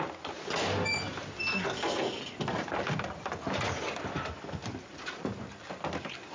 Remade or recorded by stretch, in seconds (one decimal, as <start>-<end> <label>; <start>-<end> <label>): 0.0-6.3 recorded